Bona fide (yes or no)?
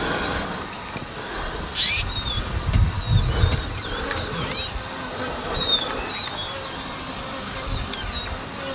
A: yes